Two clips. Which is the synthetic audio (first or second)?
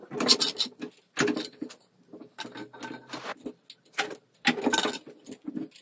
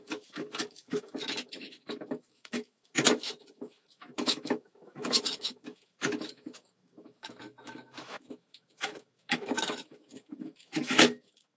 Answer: second